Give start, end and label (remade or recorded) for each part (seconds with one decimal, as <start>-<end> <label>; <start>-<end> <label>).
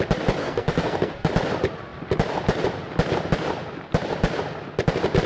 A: 0.0-0.4 recorded; 0.4-1.3 remade; 1.3-5.3 recorded